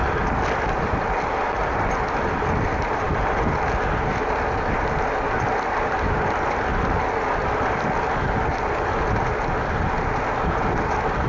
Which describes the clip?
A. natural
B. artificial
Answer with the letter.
A